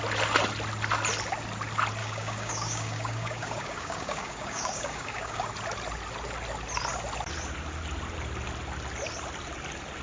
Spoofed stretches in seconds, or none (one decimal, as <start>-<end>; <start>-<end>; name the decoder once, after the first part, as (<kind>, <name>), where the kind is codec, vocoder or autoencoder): 2.0-5.5 (codec, DAC)